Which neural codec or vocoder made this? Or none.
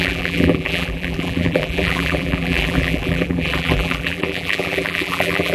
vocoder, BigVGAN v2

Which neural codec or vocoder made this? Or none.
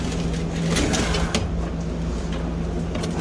none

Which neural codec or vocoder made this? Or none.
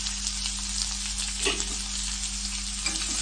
none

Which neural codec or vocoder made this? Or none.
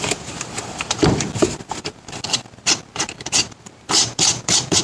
vocoder, BigVGAN v2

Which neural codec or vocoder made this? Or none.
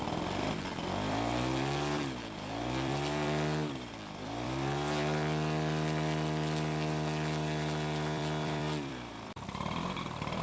vocoder, BigVGAN v2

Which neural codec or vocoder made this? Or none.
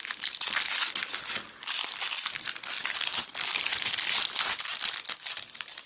none